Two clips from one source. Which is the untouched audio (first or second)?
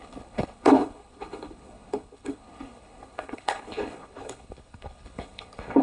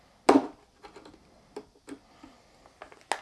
second